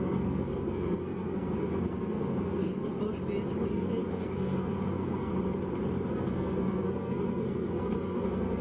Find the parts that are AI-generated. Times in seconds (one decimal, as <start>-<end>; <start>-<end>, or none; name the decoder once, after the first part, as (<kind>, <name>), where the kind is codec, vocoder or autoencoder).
0.0-3.0 (codec, SNAC); 3.7-5.3; 6.1-8.6